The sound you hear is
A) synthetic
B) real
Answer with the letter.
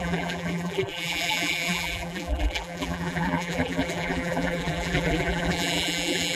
A